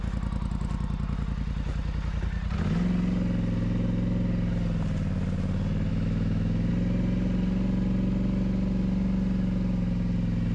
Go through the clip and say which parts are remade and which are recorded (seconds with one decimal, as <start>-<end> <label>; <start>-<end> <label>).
0.0-5.9 recorded; 5.9-6.7 remade; 6.7-10.5 recorded

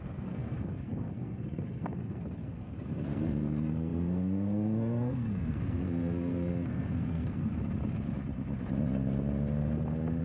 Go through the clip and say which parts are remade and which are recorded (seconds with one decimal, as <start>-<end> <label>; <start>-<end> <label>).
0.0-7.5 remade; 7.5-10.2 recorded

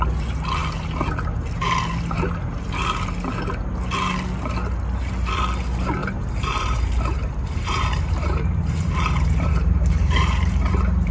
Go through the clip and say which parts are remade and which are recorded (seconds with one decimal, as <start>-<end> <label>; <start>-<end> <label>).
0.0-6.0 recorded; 6.0-11.1 remade

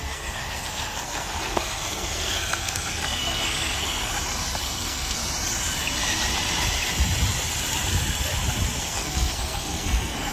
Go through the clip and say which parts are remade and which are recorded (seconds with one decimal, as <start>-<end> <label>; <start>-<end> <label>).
0.0-4.1 remade; 4.1-4.6 recorded; 4.6-5.2 remade; 5.2-8.8 recorded; 8.8-10.3 remade

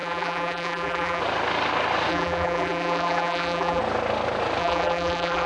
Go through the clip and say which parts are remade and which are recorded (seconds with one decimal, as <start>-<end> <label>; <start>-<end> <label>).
0.0-1.2 remade; 1.2-2.1 recorded; 2.1-3.8 remade; 3.8-4.6 recorded; 4.6-5.5 remade

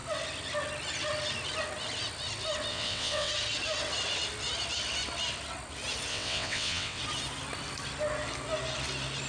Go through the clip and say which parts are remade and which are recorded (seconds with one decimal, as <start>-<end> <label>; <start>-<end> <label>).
0.0-2.7 recorded; 2.7-3.3 remade; 3.3-6.1 recorded; 6.1-7.0 remade; 7.0-9.3 recorded

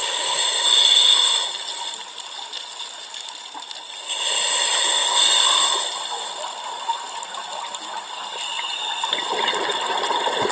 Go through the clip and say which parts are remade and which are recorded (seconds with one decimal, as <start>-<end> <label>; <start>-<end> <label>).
0.0-10.5 recorded

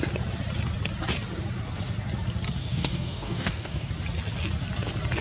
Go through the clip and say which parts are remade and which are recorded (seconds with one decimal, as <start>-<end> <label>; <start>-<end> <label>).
0.0-2.6 recorded; 2.6-3.9 remade; 3.9-5.2 recorded